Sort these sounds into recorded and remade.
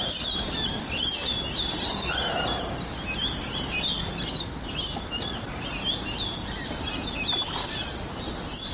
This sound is recorded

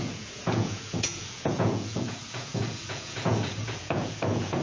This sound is remade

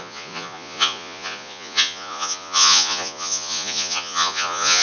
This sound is remade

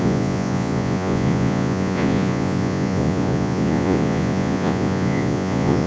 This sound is remade